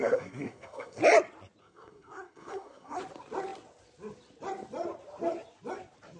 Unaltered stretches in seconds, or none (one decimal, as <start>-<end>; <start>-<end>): 1.0-1.6; 3.0-6.2